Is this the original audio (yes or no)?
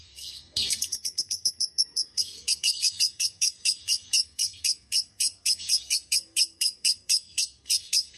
no